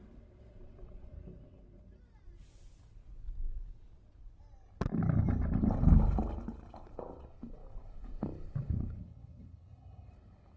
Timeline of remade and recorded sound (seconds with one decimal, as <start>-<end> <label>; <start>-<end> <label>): 0.0-9.0 recorded; 9.0-10.1 remade; 10.1-10.6 recorded